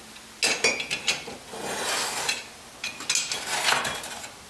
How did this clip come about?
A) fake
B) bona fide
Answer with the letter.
B